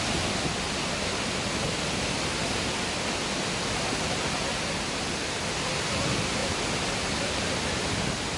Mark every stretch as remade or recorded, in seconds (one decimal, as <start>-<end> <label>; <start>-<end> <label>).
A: 0.0-8.4 recorded